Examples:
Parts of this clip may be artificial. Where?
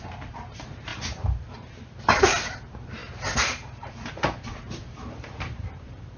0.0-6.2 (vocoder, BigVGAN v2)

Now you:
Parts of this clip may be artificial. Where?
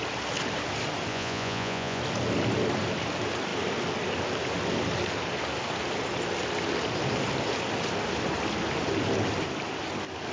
1.1-2.0 (vocoder, Vocos)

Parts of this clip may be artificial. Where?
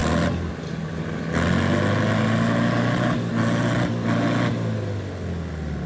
none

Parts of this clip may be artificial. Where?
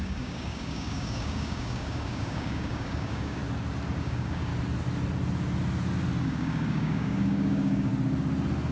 0.0-3.4 (codec, DAC); 4.0-4.5; 6.2-7.9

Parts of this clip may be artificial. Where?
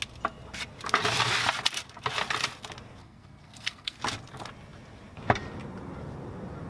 3.0-4.0 (codec, SNAC)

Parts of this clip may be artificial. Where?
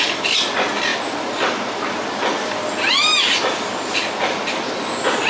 none